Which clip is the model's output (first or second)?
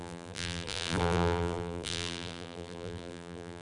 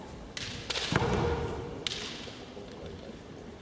first